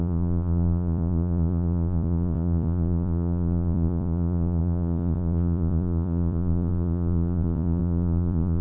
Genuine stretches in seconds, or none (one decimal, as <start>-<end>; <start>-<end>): none